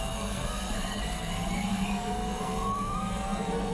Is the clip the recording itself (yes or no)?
no